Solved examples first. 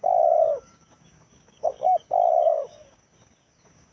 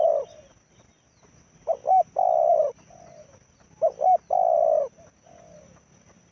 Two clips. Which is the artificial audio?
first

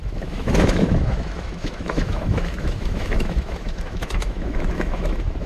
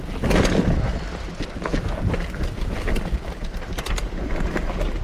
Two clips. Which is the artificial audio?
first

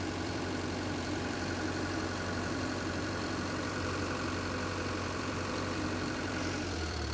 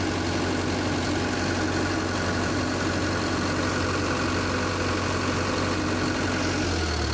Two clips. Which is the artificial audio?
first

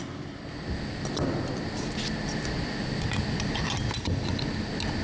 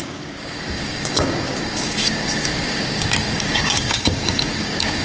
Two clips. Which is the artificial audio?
second